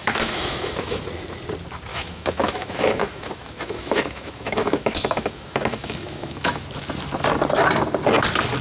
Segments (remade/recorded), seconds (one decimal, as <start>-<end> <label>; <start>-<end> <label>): 0.0-1.0 remade; 1.0-1.9 recorded; 1.9-6.6 remade; 6.6-8.6 recorded